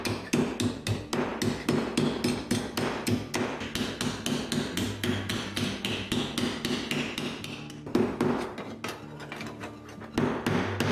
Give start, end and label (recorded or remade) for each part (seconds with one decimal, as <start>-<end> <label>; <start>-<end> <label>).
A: 0.0-10.9 recorded